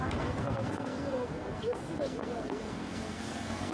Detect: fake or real fake